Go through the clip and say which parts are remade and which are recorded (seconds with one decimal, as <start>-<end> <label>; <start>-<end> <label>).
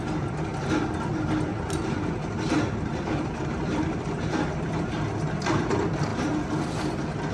0.0-7.3 recorded